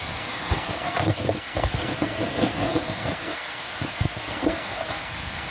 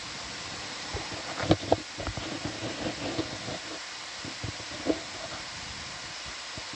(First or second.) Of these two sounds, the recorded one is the second